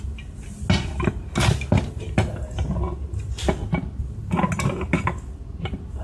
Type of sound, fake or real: real